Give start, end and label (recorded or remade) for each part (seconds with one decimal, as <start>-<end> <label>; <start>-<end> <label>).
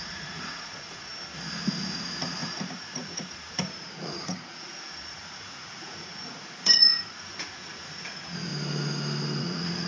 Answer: 0.0-1.1 remade; 1.1-1.8 recorded; 1.8-8.5 remade; 8.5-9.4 recorded; 9.4-9.9 remade